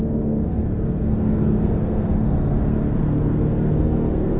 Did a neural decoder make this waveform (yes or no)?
yes